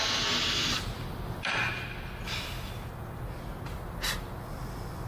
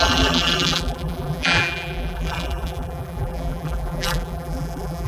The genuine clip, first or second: first